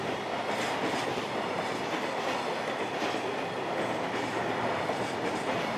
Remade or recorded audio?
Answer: recorded